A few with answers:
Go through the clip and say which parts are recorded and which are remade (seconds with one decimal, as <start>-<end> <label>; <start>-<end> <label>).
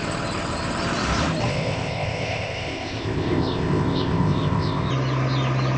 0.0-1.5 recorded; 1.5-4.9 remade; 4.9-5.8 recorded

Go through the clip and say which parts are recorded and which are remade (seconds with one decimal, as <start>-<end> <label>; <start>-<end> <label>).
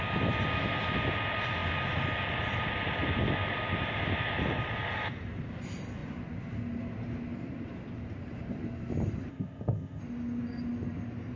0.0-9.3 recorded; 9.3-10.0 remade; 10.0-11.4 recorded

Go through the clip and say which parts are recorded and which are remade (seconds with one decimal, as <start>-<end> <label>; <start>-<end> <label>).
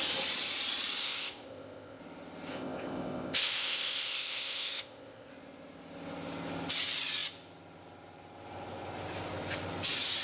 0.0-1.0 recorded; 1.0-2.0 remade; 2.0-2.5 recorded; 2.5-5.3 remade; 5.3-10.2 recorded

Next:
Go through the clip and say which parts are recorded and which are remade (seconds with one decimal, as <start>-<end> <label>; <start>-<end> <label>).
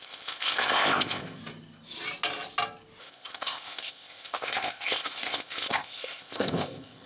0.0-1.4 remade; 1.4-3.0 recorded; 3.0-7.1 remade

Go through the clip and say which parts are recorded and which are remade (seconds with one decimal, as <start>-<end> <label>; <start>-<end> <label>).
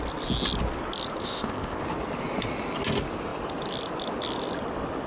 0.0-1.2 recorded; 1.2-1.8 remade; 1.8-5.1 recorded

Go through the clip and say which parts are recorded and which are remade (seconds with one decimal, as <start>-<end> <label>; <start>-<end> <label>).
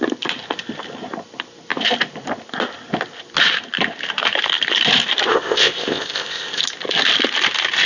0.0-5.3 recorded; 5.3-6.6 remade; 6.6-7.9 recorded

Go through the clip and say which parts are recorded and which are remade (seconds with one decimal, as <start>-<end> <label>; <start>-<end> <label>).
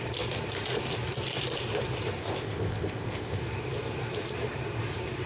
0.0-2.2 recorded; 2.2-3.4 remade; 3.4-5.3 recorded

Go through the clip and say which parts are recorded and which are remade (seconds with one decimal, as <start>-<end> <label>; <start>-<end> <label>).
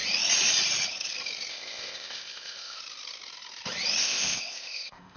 0.0-1.5 recorded; 1.5-2.8 remade; 2.8-4.0 recorded; 4.0-5.2 remade